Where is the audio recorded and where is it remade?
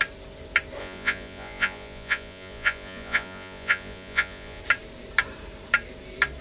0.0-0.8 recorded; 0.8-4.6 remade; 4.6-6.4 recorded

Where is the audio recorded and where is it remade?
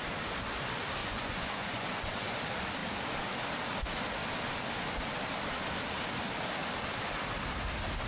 0.0-1.0 recorded; 1.0-2.4 remade; 2.4-8.1 recorded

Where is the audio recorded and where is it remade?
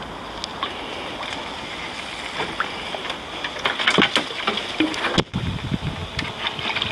0.0-6.9 recorded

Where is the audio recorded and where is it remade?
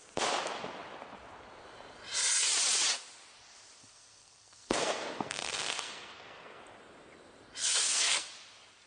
0.0-3.8 recorded; 3.8-6.6 remade; 6.6-7.6 recorded; 7.6-8.3 remade; 8.3-8.9 recorded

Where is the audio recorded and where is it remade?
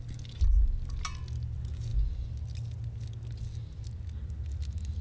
0.0-5.0 recorded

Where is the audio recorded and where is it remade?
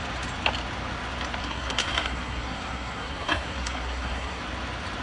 0.0-1.4 recorded; 1.4-4.4 remade; 4.4-5.0 recorded